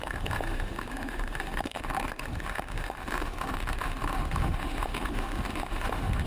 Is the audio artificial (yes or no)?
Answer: yes